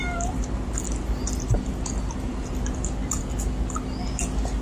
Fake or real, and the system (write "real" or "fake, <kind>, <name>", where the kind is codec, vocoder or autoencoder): real